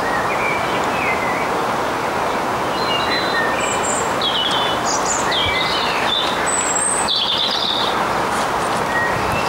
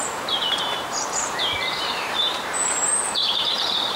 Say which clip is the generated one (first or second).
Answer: second